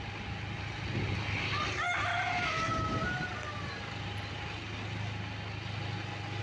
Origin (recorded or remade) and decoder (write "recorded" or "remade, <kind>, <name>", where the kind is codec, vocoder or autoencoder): recorded